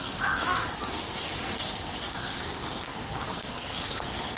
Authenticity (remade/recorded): remade